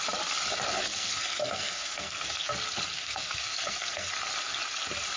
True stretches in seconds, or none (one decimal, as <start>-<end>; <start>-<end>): 0.0-0.7; 2.5-2.9; 4.1-5.2